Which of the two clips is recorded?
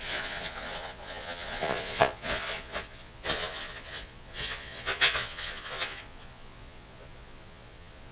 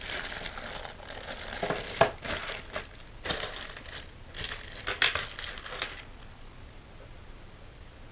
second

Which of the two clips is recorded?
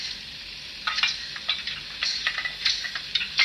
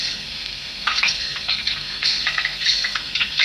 first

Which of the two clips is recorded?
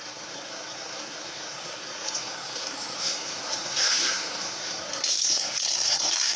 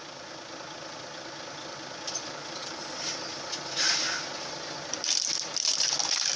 second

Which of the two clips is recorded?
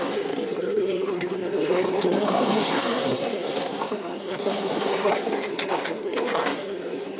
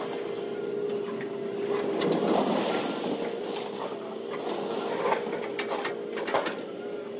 second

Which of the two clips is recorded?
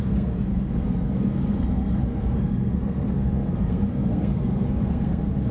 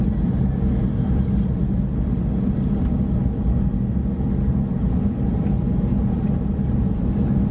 second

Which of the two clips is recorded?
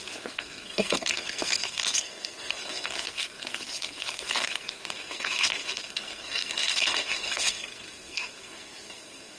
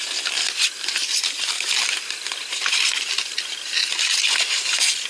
second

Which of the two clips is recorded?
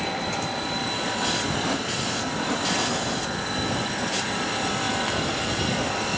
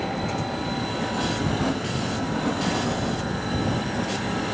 second